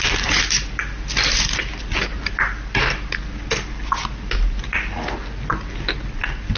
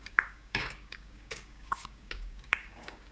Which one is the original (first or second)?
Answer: first